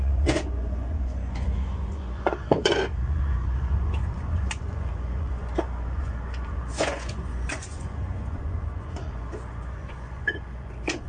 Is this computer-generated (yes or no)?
yes